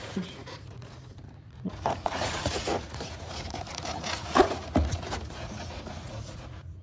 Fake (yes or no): yes